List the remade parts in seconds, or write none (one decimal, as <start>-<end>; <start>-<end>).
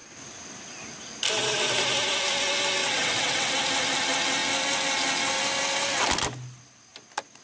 2.8-3.5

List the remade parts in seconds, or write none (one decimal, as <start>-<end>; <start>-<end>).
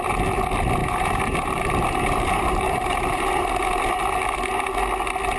0.8-3.4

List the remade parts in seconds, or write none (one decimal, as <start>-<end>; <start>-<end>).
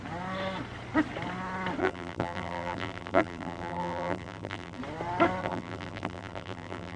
1.8-4.8; 5.4-7.0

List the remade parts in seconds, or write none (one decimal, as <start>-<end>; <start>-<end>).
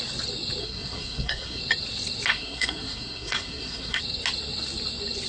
0.6-1.6; 2.3-4.0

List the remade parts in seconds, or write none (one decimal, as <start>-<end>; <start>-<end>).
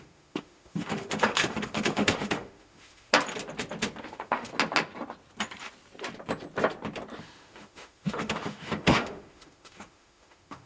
0.0-3.1; 4.0-4.5; 7.2-10.7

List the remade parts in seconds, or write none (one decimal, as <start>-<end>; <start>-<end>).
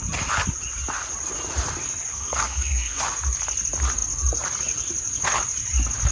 2.1-3.0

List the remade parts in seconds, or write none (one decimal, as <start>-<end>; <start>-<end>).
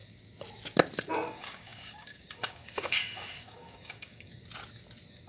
1.1-4.4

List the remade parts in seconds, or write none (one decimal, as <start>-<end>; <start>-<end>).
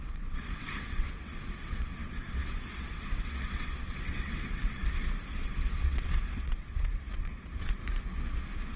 0.0-4.8; 5.3-7.8